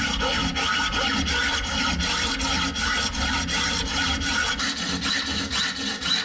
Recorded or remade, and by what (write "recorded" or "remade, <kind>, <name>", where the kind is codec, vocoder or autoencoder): recorded